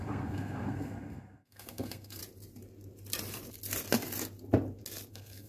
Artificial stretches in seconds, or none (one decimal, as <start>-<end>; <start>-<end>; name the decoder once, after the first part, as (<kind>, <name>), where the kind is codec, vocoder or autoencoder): 0.0-2.2 (codec, SNAC); 5.1-5.5

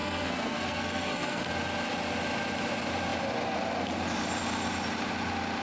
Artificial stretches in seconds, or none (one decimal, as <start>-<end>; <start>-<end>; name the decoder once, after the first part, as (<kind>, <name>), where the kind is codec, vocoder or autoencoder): 0.0-1.5 (codec, SNAC)

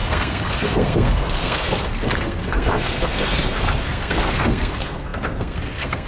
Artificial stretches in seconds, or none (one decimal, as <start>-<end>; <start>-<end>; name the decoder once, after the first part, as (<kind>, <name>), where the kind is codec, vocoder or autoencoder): 0.0-6.1 (codec, SNAC)

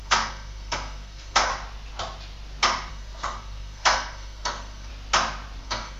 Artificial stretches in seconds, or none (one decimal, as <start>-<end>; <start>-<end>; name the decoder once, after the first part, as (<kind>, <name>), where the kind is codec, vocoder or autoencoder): 0.0-1.5 (codec, SNAC); 2.9-4.9; 5.6-6.0

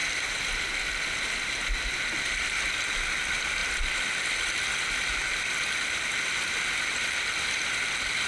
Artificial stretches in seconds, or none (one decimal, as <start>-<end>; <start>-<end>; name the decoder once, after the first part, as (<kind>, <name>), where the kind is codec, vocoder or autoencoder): none

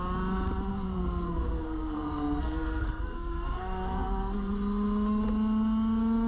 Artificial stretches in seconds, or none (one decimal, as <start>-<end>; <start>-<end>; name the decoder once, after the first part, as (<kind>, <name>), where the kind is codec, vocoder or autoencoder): 0.7-4.5 (codec, SNAC)

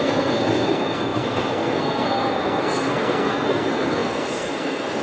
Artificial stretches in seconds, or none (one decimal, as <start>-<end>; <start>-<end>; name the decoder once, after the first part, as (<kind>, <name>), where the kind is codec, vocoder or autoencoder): 0.0-5.0 (codec, SNAC)

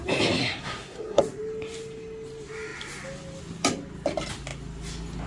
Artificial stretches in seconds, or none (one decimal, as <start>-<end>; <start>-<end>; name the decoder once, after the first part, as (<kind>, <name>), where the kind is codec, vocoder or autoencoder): 0.4-1.2 (codec, SNAC)